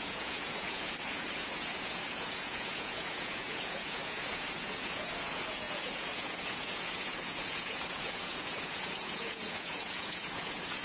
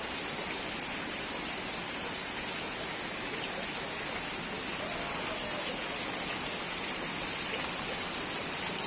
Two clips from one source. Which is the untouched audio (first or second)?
second